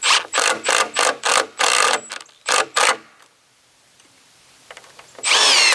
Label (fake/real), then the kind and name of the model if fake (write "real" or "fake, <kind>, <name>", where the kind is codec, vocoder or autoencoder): real